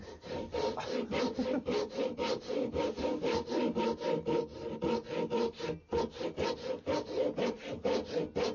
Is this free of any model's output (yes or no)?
yes